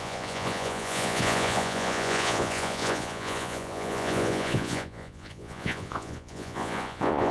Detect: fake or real fake